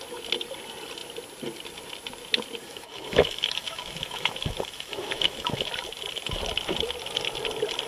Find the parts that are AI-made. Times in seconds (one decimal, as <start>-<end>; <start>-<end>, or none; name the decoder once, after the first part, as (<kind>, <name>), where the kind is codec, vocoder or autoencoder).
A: 2.6-5.7 (autoencoder, DAC-VAE)